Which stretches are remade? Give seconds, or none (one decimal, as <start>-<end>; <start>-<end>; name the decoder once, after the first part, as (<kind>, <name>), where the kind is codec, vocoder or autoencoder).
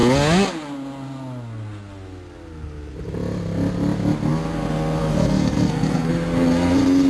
5.0-6.1 (codec, SNAC)